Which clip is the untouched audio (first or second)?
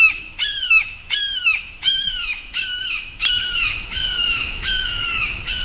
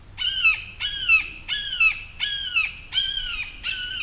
second